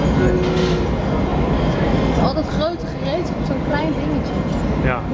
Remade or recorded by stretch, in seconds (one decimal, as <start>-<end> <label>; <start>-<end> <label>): 0.0-1.3 recorded; 1.3-4.2 remade; 4.2-5.1 recorded